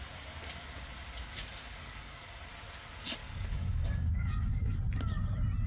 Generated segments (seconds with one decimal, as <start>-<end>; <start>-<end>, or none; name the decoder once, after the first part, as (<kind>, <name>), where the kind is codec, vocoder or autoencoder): 1.4-2.4 (codec, DAC); 3.2-4.8